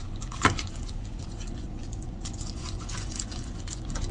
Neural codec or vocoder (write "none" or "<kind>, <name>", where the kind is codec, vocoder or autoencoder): vocoder, Vocos